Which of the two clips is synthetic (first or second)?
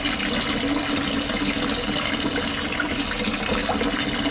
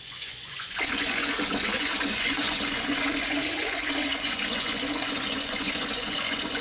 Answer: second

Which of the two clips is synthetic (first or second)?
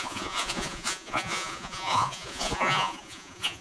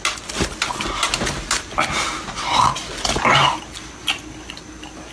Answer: first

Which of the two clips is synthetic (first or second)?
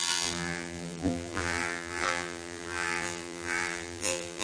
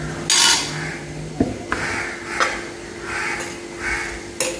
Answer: first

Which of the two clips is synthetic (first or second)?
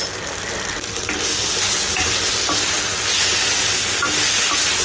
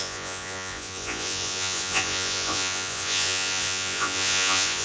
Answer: second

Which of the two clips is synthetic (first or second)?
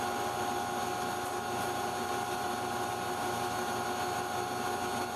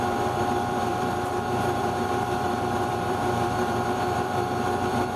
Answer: second